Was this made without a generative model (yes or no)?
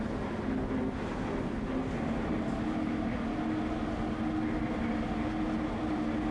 yes